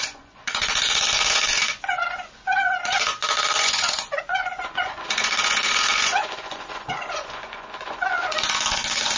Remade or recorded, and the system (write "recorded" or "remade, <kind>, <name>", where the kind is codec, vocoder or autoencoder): remade, vocoder, Vocos